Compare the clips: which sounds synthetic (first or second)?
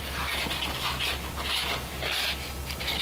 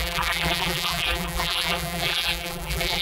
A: second